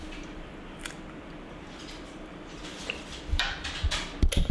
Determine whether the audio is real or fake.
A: fake